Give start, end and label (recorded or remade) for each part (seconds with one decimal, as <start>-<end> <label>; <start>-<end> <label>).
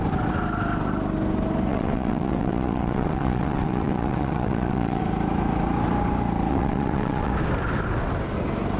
0.0-1.7 recorded; 1.7-5.0 remade; 5.0-6.5 recorded; 6.5-7.3 remade; 7.3-8.8 recorded